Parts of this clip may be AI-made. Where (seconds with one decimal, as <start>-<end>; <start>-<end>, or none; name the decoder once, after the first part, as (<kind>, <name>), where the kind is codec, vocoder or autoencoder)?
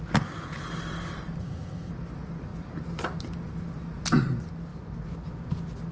1.4-1.9 (codec, ZipCodec)